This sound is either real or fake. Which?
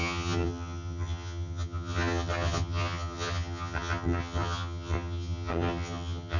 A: fake